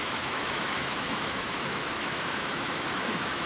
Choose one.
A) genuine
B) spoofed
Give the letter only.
B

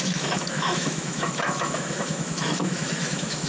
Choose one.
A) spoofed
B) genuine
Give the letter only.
A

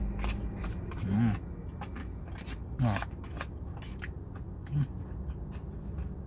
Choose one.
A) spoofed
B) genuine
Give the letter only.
B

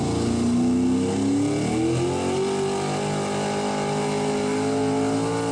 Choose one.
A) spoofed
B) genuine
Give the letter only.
B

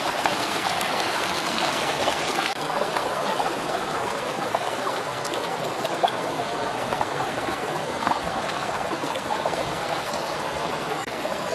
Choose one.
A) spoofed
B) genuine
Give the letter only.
A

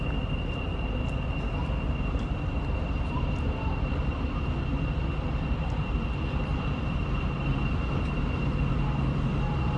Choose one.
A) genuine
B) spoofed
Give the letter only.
A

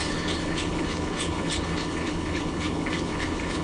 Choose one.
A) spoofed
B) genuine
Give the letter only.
A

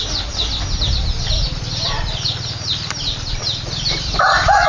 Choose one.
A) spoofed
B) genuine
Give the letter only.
B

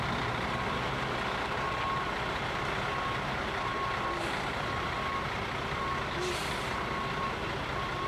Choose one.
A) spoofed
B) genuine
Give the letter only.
B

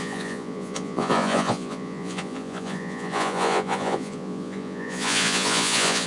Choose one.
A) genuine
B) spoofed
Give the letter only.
B